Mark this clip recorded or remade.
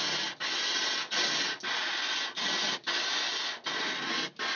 recorded